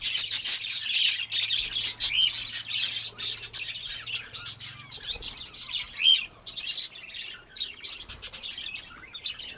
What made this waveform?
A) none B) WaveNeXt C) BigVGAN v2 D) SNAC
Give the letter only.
A